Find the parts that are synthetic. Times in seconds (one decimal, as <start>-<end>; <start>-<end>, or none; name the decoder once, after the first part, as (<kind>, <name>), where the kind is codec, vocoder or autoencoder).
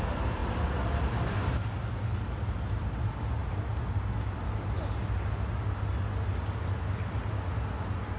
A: none